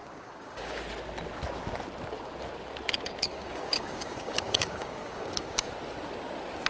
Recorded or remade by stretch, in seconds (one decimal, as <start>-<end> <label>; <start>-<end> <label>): 0.0-0.8 remade; 0.8-3.3 recorded; 3.3-5.7 remade; 5.7-6.7 recorded